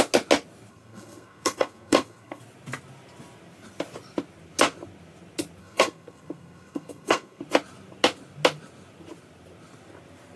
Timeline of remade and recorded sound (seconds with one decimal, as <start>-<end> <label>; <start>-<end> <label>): 0.0-0.7 recorded; 0.7-2.4 remade; 2.4-5.6 recorded; 5.6-7.4 remade; 7.4-10.4 recorded